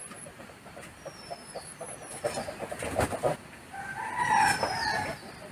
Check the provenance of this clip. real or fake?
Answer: fake